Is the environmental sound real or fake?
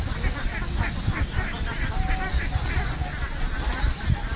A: real